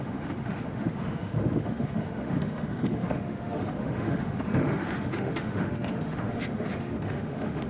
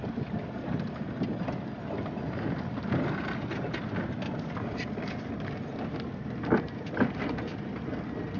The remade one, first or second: first